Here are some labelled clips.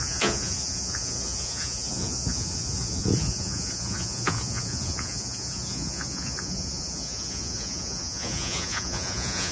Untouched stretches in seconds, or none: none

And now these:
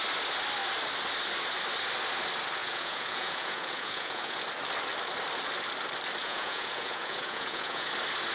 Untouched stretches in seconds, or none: 0.0-2.6; 4.4-6.2; 7.9-8.3

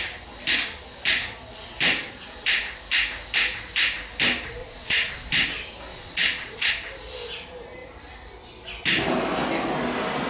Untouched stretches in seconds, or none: 0.0-4.6; 5.1-5.9; 6.7-10.3

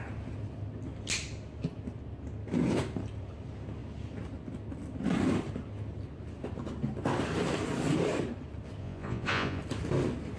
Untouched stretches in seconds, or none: 0.0-8.8; 9.6-10.4

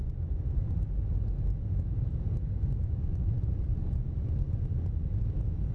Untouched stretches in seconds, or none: 0.6-2.8; 5.1-5.7

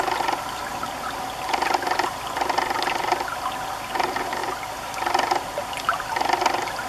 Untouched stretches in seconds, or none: 0.0-6.9